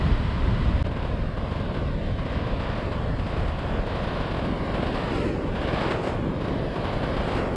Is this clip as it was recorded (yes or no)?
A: yes